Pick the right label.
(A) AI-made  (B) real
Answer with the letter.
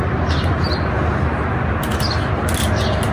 B